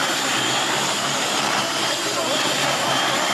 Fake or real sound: fake